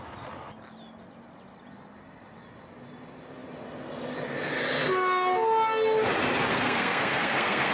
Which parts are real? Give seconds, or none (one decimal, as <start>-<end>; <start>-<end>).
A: 0.0-6.5